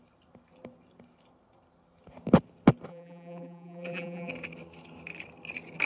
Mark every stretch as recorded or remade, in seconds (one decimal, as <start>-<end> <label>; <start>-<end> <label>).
0.0-2.9 recorded; 2.9-4.3 remade; 4.3-5.9 recorded